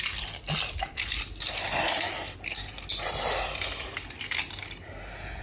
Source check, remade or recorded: recorded